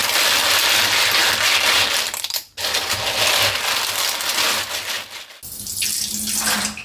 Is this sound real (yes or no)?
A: yes